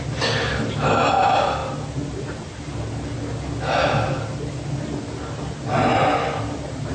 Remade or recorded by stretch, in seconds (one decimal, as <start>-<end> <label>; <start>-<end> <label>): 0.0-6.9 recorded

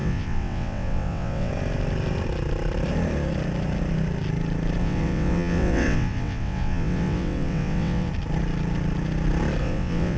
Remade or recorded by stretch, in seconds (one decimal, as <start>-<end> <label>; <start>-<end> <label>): 0.0-1.5 remade; 1.5-4.8 recorded; 4.8-8.1 remade; 8.1-9.6 recorded; 9.6-10.2 remade

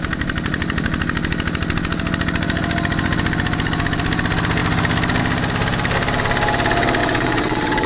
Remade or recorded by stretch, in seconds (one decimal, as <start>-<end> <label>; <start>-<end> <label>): 0.0-7.0 recorded; 7.0-7.9 remade

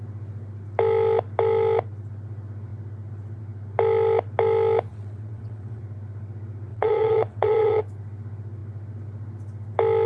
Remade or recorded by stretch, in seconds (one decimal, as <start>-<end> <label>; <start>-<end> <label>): 0.0-4.9 recorded; 4.9-5.8 remade; 5.8-6.7 recorded; 6.7-7.8 remade; 7.8-10.1 recorded

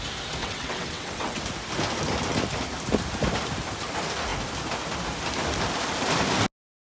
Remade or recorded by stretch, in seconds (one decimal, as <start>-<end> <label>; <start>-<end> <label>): 0.0-0.4 recorded; 0.4-1.4 remade; 1.4-6.9 recorded

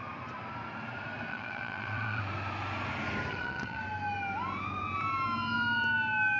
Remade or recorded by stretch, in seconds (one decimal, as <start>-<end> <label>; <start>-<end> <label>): 0.0-1.3 recorded; 1.3-2.2 remade; 2.2-3.3 recorded; 3.3-3.8 remade; 3.8-6.4 recorded